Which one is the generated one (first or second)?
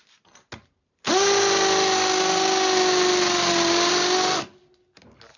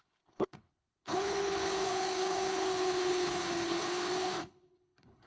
second